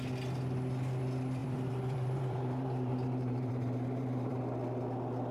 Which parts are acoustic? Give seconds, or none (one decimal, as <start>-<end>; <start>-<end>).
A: 0.0-1.4; 4.4-5.3